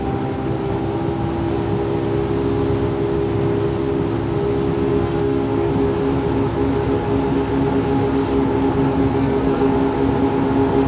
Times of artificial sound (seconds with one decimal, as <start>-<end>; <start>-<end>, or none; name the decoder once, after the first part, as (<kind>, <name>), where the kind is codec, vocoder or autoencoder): 4.9-5.7 (codec, SNAC); 9.0-9.7